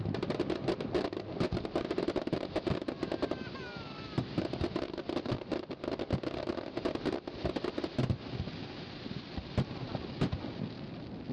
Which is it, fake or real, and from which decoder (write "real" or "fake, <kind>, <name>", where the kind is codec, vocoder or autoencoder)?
real